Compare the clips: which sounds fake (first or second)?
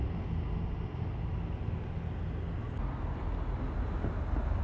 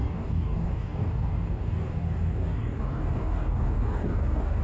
second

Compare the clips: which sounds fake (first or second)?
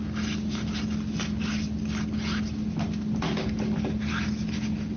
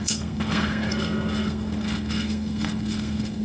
second